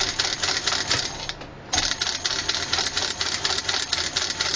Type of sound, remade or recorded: recorded